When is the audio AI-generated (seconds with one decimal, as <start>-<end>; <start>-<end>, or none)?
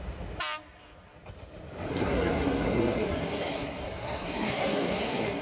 1.9-5.4